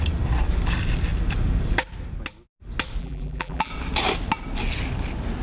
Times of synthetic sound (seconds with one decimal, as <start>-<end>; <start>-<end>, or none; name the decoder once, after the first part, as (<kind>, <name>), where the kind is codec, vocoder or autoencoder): 3.0-3.7 (vocoder, BigVGAN v2)